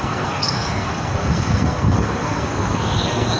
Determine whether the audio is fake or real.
fake